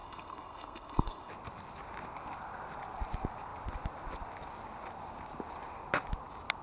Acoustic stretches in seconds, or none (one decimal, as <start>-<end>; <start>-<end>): 1.3-6.6

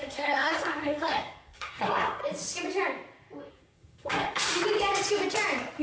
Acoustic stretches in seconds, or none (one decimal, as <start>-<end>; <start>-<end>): 2.2-3.5; 4.5-5.8

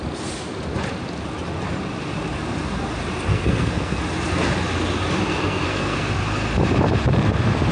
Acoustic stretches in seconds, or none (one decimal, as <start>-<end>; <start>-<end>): 0.0-3.3; 4.0-5.3; 6.1-7.7

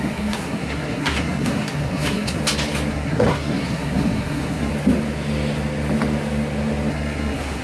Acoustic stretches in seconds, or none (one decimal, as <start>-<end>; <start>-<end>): 2.4-2.9; 4.7-6.9

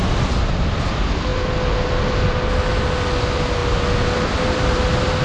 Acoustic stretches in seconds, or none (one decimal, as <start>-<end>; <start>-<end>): 0.0-5.2

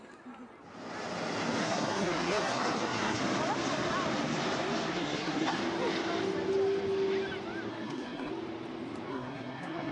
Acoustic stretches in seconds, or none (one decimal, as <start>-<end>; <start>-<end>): 0.0-1.6; 3.2-4.9; 5.6-7.7; 8.3-9.1

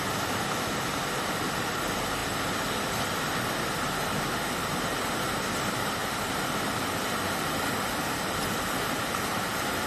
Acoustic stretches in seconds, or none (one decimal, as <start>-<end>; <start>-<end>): 0.0-9.9